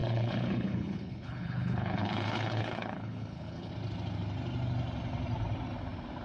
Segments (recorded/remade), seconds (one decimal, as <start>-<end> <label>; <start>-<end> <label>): 0.0-3.7 remade; 3.7-6.2 recorded